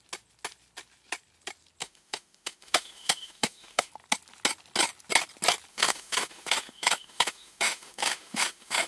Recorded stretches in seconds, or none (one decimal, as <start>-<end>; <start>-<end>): 0.0-1.8; 3.9-5.7